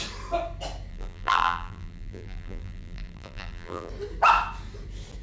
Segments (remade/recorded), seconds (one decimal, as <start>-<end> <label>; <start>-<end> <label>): 0.0-0.9 recorded; 0.9-3.9 remade; 3.9-5.2 recorded